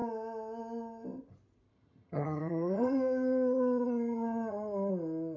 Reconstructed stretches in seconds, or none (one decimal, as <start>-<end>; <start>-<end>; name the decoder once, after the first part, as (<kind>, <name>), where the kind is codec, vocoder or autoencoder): 1.7-4.9 (vocoder, HiFi-GAN)